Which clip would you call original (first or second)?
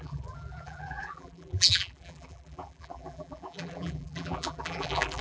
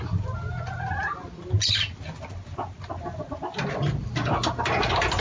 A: second